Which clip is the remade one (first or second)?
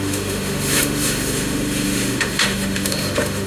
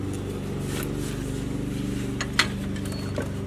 first